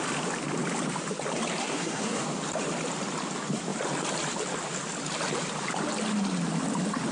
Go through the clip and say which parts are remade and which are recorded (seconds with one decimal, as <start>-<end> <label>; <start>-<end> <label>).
0.0-1.6 recorded; 1.6-2.2 remade; 2.2-7.1 recorded